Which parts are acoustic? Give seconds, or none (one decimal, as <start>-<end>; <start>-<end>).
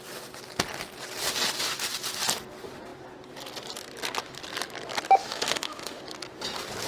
0.0-5.2; 6.0-6.9